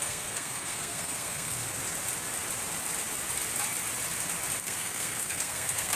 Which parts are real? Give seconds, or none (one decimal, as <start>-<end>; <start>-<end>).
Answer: 1.6-4.6